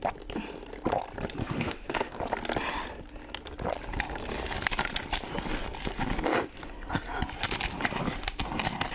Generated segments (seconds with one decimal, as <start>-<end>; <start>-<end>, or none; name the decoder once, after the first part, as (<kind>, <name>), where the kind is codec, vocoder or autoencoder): 1.4-2.2 (autoencoder, DAC-VAE)